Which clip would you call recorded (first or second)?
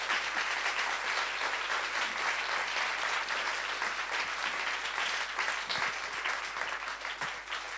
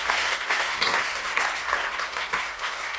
first